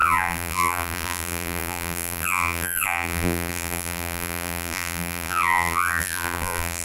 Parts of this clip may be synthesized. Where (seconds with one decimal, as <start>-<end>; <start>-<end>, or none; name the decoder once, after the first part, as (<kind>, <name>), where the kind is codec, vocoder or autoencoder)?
0.0-6.8 (vocoder, BigVGAN v2)